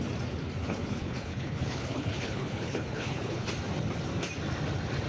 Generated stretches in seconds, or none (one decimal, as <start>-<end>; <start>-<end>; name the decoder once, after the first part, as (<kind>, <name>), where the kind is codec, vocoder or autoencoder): 0.6-3.5 (codec, HILCodec)